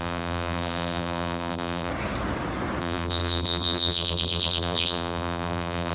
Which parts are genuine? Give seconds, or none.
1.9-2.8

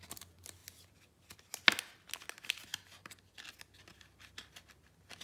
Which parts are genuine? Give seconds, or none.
0.0-2.7; 3.4-5.2

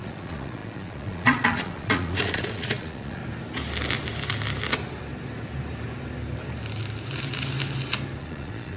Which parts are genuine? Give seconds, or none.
3.2-8.2

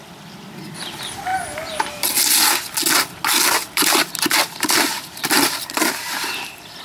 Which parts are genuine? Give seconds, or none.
1.3-3.4

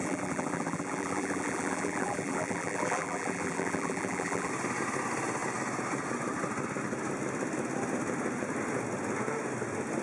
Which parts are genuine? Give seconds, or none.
4.5-10.0

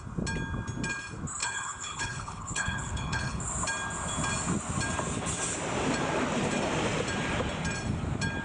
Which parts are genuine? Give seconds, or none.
0.0-1.4; 3.4-8.4

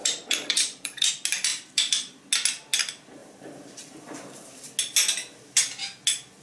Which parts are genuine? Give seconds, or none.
1.1-1.5; 2.2-3.2; 4.6-6.4